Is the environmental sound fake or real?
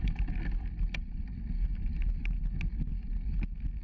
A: real